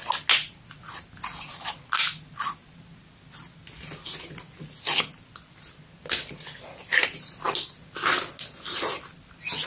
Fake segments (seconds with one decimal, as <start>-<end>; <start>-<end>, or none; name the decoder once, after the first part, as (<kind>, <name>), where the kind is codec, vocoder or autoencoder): none